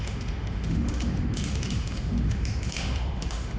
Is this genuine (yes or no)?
no